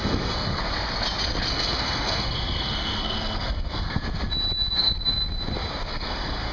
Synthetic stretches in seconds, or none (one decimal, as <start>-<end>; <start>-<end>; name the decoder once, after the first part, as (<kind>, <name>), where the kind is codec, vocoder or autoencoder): 0.0-0.6 (codec, SNAC); 1.5-4.0; 5.9-6.5